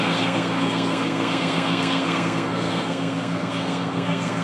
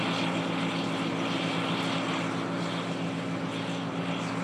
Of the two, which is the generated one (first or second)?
first